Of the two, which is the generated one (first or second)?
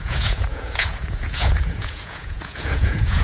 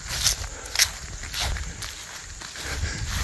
first